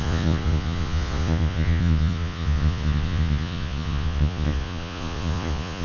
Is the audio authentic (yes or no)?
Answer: no